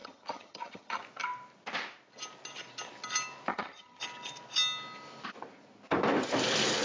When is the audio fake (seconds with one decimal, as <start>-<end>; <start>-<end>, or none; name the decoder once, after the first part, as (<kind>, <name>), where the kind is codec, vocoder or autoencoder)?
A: 0.0-1.0 (vocoder, HiFi-GAN); 3.5-4.0